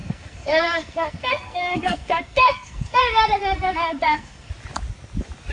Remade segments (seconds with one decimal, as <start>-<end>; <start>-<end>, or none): 0.0-3.0; 3.4-4.5